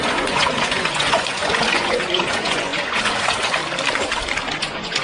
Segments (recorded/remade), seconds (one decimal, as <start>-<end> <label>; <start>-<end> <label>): 0.0-3.6 remade; 3.6-4.5 recorded; 4.5-5.0 remade